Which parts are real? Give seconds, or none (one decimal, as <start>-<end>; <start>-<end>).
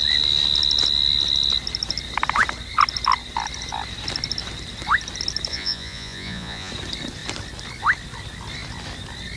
0.0-5.5; 6.7-9.4